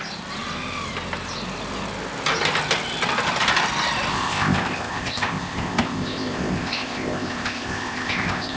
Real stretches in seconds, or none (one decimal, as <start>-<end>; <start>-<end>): 0.0-4.1